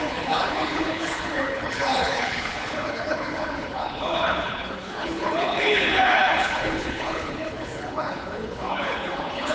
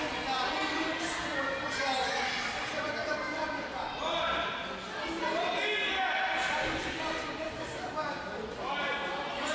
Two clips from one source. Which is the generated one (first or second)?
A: first